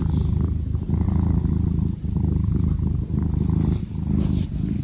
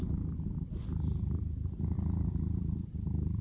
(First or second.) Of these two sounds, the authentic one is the first